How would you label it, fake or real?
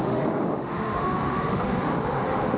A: fake